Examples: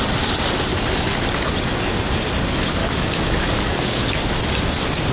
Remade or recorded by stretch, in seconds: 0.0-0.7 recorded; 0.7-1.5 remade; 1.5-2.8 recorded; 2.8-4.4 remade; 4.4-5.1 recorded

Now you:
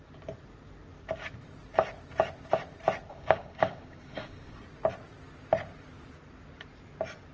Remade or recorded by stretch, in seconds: 0.0-3.1 recorded; 3.1-4.6 remade; 4.6-7.3 recorded

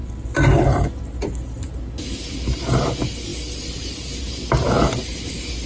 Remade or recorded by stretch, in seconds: 0.0-3.3 recorded; 3.3-4.2 remade; 4.2-5.7 recorded

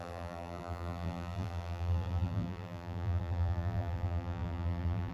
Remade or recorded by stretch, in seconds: 0.0-5.1 remade

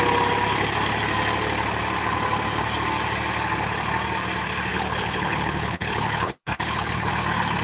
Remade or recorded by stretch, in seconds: 0.0-4.7 recorded; 4.7-7.1 remade; 7.1-7.6 recorded